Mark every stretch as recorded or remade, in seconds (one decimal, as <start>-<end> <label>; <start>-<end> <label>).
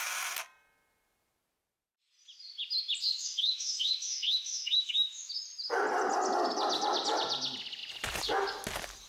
0.0-3.0 recorded; 3.0-5.3 remade; 5.3-9.1 recorded